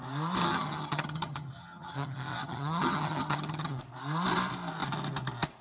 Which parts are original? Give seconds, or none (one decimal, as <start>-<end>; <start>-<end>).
0.0-0.4; 3.8-5.6